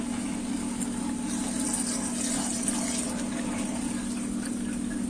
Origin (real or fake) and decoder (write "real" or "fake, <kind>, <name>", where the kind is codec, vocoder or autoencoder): real